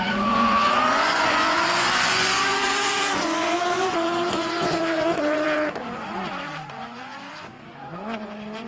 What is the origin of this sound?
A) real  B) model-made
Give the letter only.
B